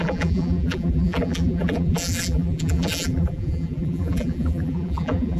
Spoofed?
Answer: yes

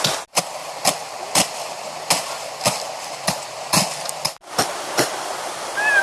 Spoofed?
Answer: no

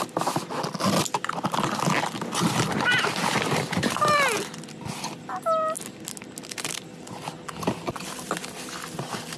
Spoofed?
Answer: no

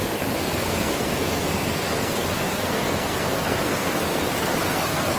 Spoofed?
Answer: yes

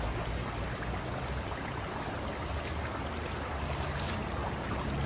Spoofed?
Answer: no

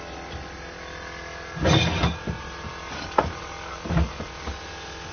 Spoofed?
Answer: no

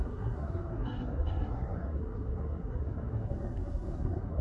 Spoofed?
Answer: yes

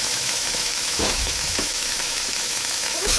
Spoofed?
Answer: yes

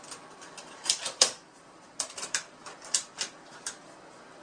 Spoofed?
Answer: yes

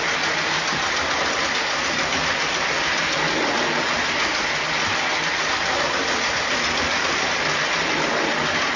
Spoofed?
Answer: no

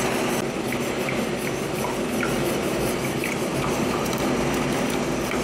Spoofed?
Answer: no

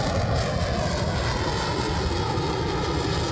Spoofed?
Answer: no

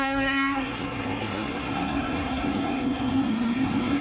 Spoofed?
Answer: yes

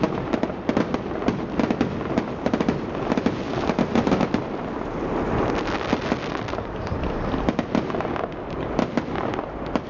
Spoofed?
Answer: no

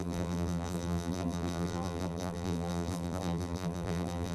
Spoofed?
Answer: yes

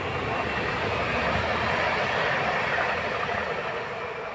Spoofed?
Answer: no